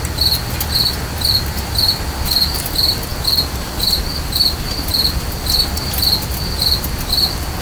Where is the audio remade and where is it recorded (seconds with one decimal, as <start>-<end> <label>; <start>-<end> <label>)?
0.0-7.6 recorded